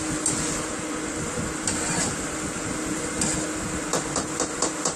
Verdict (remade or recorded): recorded